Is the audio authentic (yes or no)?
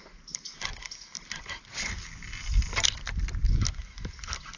yes